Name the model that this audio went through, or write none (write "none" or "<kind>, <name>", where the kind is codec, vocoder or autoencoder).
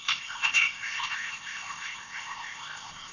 codec, ZipCodec